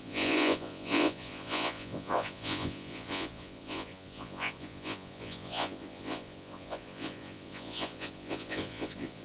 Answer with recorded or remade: remade